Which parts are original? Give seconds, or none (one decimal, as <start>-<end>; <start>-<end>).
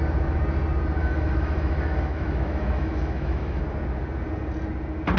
0.0-1.0; 3.6-5.2